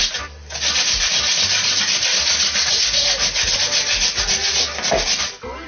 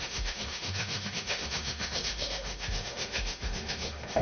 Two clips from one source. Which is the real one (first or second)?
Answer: first